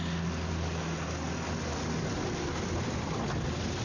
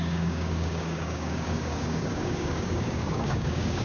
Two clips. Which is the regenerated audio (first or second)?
second